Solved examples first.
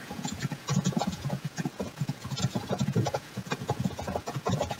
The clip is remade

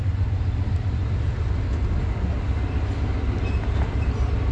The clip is recorded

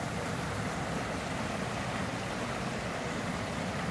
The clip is recorded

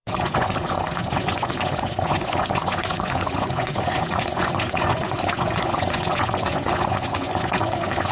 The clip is remade